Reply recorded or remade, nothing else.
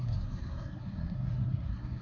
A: remade